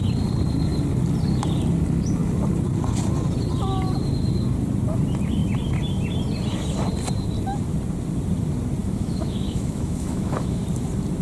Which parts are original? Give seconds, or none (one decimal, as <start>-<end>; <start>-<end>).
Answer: 0.0-8.8; 10.6-11.2